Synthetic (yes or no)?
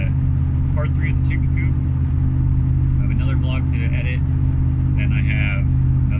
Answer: no